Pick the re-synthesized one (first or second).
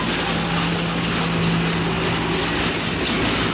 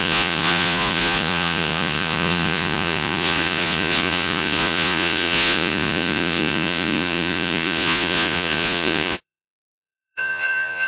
second